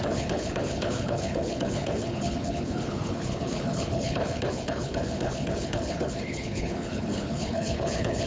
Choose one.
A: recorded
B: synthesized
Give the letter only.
B